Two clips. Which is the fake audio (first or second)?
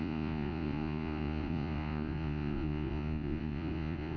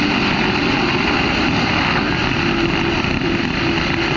first